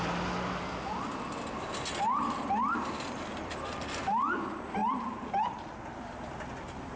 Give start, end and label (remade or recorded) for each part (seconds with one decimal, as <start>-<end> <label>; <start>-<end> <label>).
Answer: 0.0-7.0 recorded